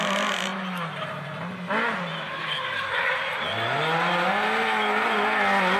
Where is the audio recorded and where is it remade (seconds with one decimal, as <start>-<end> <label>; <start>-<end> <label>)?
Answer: 0.0-5.8 recorded